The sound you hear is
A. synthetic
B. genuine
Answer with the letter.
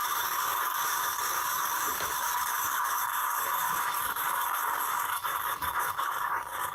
A